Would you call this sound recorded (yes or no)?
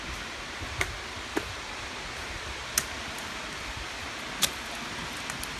yes